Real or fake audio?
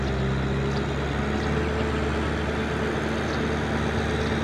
real